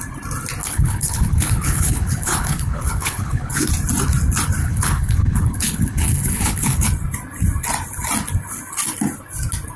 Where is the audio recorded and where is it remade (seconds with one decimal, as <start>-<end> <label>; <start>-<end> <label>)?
0.0-0.6 recorded; 0.6-3.7 remade; 3.7-4.6 recorded; 4.6-6.9 remade; 6.9-9.8 recorded